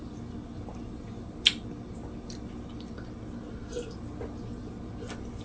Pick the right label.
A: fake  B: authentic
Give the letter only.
B